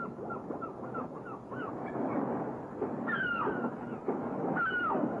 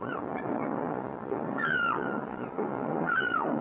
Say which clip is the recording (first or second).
first